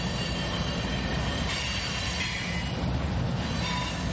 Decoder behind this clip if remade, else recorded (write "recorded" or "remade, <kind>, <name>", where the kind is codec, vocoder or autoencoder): recorded